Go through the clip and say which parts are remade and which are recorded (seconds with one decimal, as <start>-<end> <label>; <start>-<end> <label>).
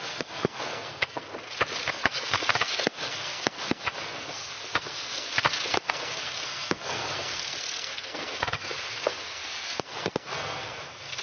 0.0-1.3 remade; 1.3-1.9 recorded; 1.9-11.2 remade